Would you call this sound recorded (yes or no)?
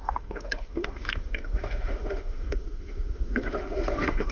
no